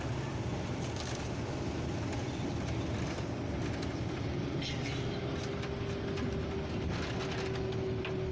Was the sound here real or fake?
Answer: real